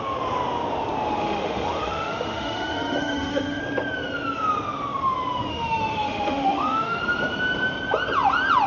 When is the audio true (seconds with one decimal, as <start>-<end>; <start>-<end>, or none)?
0.0-1.2; 3.6-5.5; 7.0-8.7